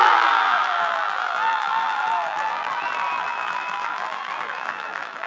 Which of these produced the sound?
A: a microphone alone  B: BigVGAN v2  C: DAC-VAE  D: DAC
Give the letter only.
B